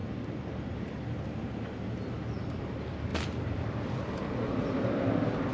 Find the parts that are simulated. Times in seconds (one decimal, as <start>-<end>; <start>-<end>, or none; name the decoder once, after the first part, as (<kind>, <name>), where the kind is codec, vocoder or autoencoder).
3.1-4.3 (vocoder, BigVGAN v2)